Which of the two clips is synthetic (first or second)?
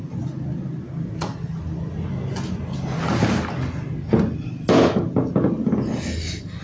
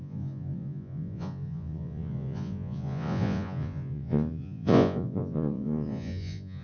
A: second